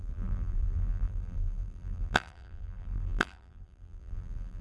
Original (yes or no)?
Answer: no